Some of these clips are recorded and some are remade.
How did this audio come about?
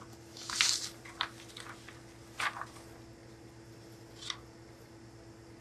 recorded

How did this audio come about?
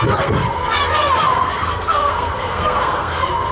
remade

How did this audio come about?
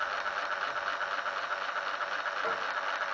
recorded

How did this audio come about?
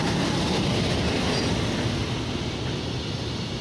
recorded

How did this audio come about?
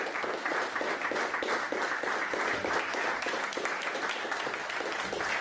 recorded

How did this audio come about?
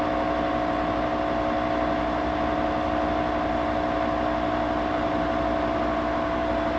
recorded